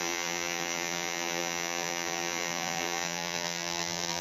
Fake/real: fake